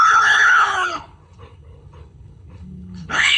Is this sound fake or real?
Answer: fake